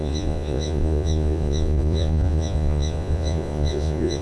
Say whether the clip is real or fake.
fake